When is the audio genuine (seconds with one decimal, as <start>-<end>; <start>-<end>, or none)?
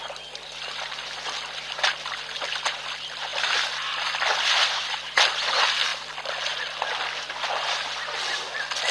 0.0-8.9